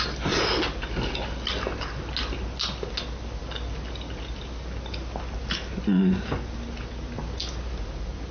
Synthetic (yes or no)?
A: no